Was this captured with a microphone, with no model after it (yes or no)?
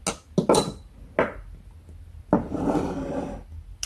yes